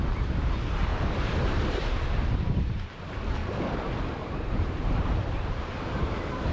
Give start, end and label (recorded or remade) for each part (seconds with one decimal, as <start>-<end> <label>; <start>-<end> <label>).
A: 0.0-3.4 remade; 3.4-4.2 recorded; 4.2-6.5 remade